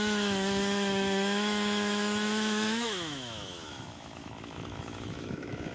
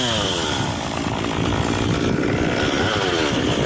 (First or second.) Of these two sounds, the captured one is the second